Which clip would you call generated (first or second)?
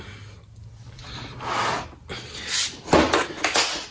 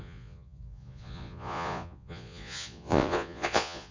second